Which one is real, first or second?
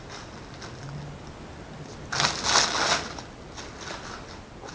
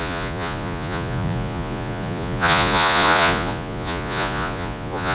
first